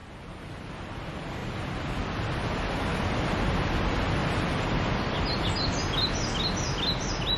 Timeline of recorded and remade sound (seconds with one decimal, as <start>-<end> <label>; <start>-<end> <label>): 0.0-0.7 remade; 0.7-4.2 recorded; 4.2-4.9 remade; 4.9-7.4 recorded